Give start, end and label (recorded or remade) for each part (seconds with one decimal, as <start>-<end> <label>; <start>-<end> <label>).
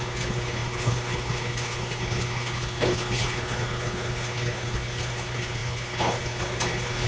0.0-7.1 remade